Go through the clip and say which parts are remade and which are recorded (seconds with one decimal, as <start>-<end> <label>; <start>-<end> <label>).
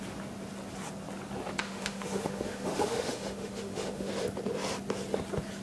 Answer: 0.0-1.6 recorded; 1.6-4.1 remade; 4.1-5.6 recorded